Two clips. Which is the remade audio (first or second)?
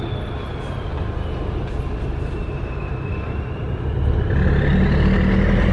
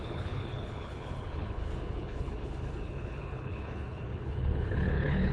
second